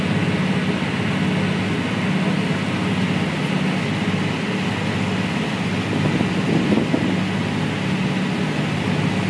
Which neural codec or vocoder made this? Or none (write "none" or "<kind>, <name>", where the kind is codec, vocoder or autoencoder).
none